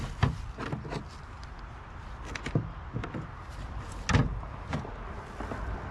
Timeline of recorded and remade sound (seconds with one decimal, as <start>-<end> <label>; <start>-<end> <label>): 0.0-5.9 recorded